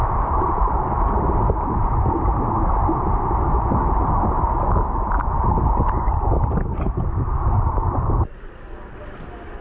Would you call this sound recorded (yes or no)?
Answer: yes